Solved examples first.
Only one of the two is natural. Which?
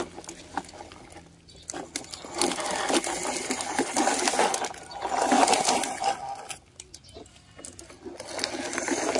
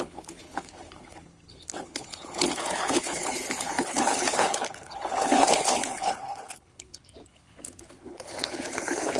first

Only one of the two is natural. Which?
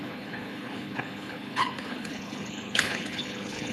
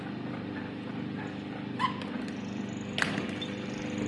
second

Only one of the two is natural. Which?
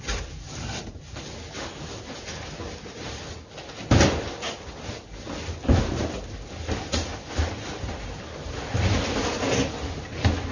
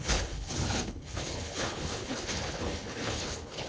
first